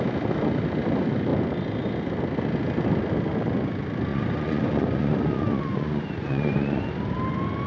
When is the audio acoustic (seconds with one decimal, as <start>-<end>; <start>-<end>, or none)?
0.0-4.1; 6.9-7.7